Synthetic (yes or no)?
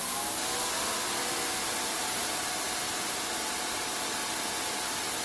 no